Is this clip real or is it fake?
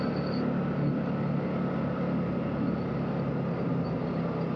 real